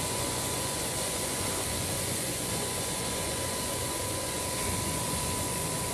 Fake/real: fake